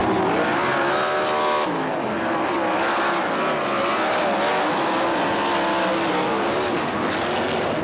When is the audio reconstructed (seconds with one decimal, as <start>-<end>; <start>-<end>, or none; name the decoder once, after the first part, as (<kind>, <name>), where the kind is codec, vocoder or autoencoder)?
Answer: none